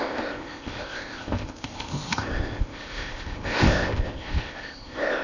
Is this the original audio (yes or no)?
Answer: no